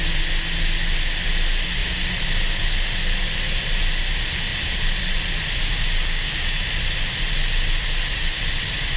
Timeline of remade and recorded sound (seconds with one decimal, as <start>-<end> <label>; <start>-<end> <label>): 0.0-6.0 recorded; 6.0-6.6 remade; 6.6-9.0 recorded